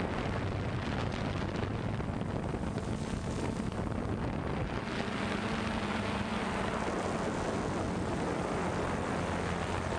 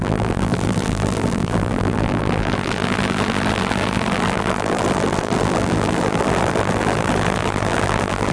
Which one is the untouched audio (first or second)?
first